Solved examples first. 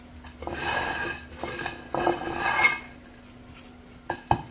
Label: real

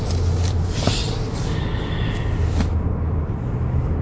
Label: real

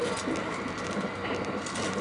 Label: real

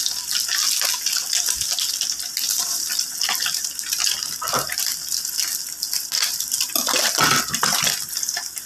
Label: real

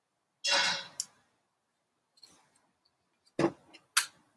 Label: real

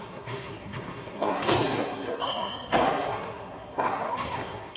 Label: fake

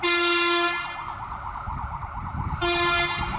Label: real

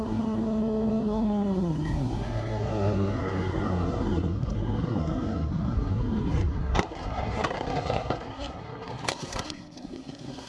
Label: fake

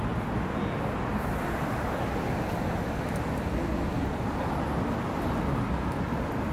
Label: real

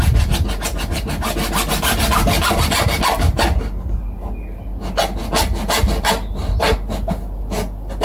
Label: real